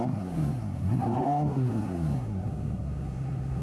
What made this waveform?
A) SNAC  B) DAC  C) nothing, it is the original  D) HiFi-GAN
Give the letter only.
A